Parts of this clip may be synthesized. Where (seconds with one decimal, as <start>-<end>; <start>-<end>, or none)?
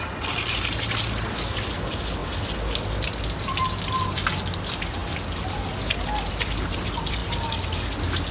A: none